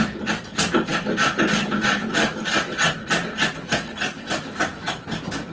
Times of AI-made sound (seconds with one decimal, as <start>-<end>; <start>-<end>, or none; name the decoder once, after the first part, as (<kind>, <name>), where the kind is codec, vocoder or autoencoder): none